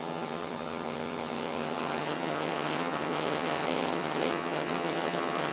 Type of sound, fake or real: fake